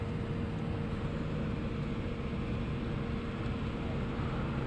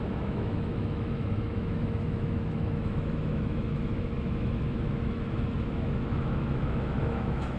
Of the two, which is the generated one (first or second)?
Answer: second